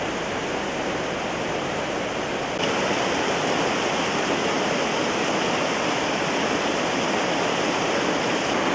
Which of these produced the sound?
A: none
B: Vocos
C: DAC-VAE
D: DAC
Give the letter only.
A